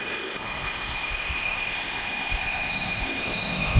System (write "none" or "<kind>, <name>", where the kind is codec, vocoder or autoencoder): codec, ZipCodec